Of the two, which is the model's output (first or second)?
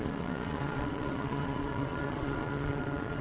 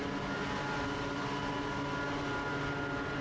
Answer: first